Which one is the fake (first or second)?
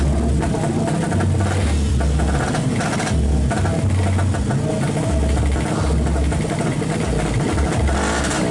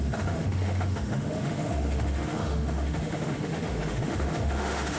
second